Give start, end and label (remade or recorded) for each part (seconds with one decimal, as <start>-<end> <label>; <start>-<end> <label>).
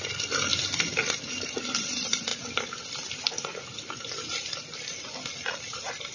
0.0-0.5 recorded; 0.5-1.4 remade; 1.4-2.3 recorded; 2.3-3.3 remade; 3.3-6.1 recorded